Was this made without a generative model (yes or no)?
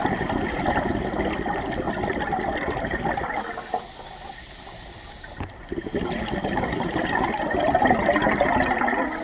yes